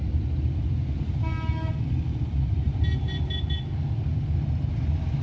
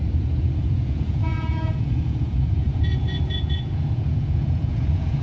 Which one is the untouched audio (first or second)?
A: first